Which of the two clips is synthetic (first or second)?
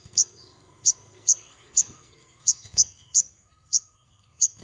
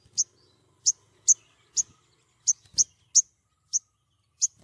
first